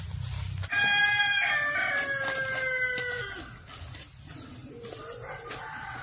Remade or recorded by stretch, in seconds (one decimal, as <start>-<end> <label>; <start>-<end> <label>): 0.0-3.1 recorded; 3.1-3.8 remade; 3.8-6.0 recorded